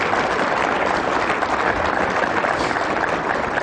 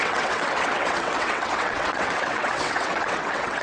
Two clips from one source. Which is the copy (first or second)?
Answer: second